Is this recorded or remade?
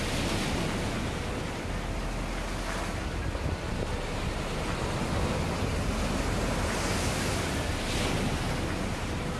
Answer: recorded